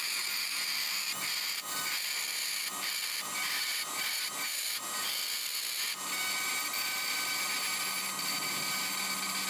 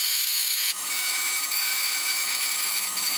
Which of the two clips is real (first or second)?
first